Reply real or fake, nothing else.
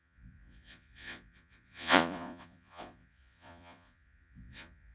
fake